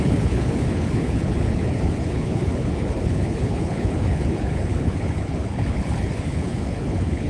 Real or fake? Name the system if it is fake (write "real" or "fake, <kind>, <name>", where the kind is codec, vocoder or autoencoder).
fake, codec, HILCodec